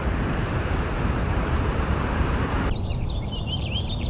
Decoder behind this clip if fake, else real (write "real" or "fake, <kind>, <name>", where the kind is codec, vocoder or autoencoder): fake, vocoder, BigVGAN v2